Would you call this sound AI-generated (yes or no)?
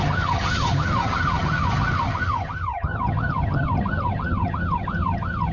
yes